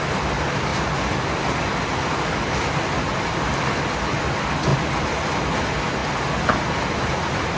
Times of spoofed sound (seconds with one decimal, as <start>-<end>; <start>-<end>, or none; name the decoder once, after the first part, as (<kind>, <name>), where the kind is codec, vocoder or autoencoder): none